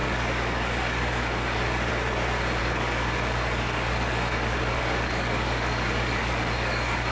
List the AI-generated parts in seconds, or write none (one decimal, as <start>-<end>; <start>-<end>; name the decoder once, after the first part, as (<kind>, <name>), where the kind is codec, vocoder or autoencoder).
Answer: 0.0-1.9 (codec, DAC); 2.6-7.1

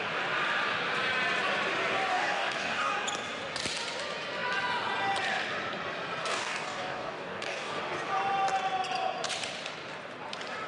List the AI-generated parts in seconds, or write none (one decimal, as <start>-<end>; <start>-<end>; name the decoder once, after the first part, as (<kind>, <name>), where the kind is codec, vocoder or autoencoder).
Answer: 2.1-2.9 (codec, DAC); 6.2-7.8

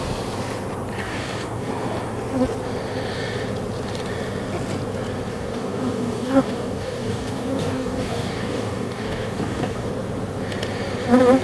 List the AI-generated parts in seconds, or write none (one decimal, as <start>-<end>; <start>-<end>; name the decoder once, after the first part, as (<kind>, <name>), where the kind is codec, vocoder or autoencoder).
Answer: 1.0-1.7 (codec, DAC); 5.3-9.9